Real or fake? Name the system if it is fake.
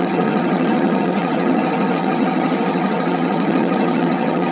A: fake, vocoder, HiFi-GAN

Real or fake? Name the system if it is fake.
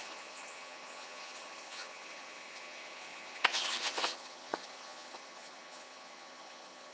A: fake, vocoder, HiFi-GAN